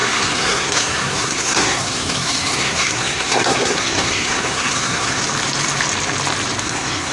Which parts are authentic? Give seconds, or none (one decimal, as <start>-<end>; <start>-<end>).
5.2-6.6